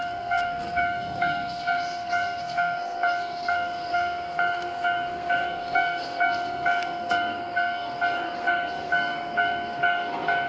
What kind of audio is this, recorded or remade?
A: remade